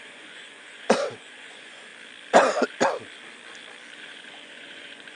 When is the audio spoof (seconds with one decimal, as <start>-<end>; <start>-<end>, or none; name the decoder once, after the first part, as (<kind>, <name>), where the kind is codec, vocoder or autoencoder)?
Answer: 0.0-1.9 (vocoder, Vocos); 4.0-5.1